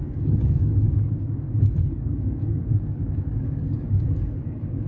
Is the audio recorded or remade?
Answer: remade